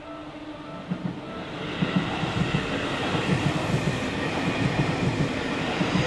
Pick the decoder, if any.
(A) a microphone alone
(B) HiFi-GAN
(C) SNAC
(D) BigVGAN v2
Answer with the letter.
A